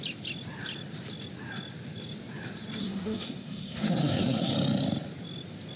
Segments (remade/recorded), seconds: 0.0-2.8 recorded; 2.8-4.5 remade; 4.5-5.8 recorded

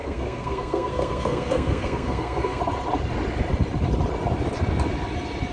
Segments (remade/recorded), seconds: 0.0-2.6 remade; 2.6-5.5 recorded

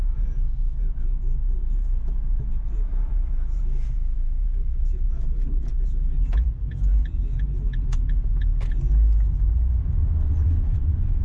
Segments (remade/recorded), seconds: 0.0-8.5 remade; 8.5-9.7 recorded; 9.7-11.2 remade

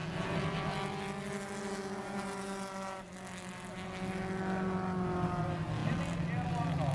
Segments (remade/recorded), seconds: 0.0-6.9 recorded